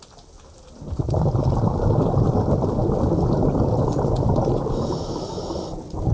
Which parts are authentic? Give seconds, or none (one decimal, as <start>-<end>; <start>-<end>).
0.0-1.7; 5.2-6.1

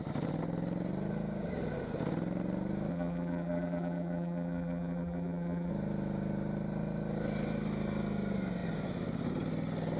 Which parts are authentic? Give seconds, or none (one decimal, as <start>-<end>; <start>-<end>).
0.0-2.9; 5.7-10.0

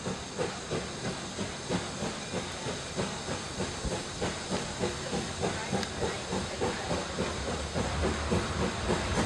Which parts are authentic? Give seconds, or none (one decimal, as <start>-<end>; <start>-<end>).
0.0-9.3

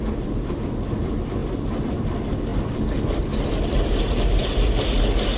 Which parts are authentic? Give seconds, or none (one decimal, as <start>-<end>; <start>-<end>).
0.0-1.4; 1.9-5.4

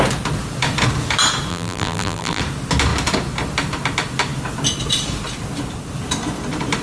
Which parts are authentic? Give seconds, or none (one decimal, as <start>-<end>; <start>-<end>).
0.0-1.5; 2.4-6.8

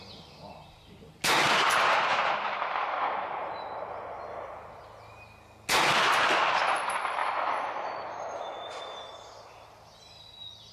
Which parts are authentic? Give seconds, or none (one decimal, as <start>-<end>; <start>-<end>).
0.0-7.2; 8.8-10.7

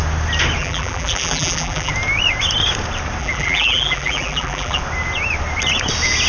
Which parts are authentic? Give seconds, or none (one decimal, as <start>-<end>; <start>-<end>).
0.0-0.6; 1.9-3.2; 4.8-6.3